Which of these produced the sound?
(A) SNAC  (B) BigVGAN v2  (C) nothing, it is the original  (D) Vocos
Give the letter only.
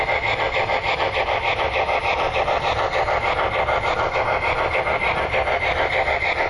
C